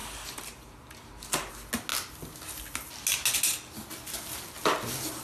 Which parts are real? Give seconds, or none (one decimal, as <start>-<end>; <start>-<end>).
1.5-5.2